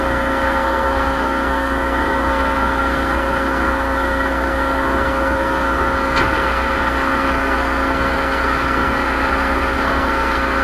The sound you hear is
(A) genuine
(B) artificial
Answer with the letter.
B